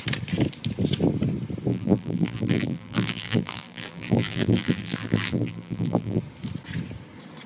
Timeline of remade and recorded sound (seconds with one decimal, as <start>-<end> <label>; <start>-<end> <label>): 0.0-1.7 recorded; 1.7-6.2 remade; 6.2-7.5 recorded